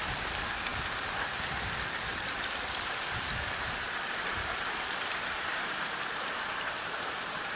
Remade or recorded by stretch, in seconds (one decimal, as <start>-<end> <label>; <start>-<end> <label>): 0.0-5.5 recorded; 5.5-7.6 remade